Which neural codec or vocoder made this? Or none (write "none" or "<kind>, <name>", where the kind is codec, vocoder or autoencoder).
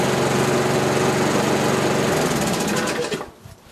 none